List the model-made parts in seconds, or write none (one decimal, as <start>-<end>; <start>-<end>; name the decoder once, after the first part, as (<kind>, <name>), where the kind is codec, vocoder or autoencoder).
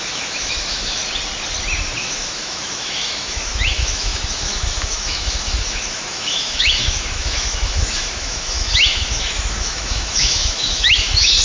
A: 0.0-1.0 (autoencoder, DAC-VAE); 2.0-11.4